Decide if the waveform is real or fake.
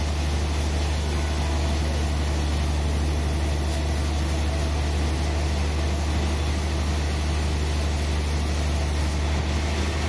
real